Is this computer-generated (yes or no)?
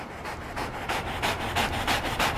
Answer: no